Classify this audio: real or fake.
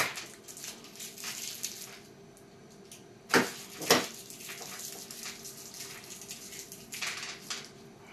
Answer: real